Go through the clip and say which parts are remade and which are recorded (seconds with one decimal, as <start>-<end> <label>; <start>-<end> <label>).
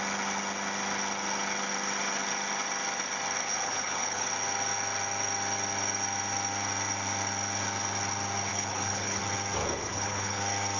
0.0-3.4 recorded; 3.4-4.3 remade; 4.3-8.5 recorded; 8.5-9.2 remade; 9.2-9.6 recorded; 9.6-10.4 remade; 10.4-10.8 recorded